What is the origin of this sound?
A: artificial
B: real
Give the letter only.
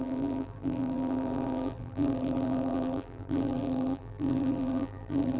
A